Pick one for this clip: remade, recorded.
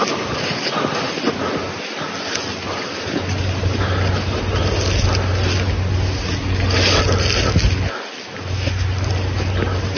recorded